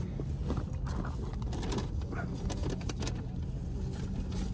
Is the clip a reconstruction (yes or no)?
no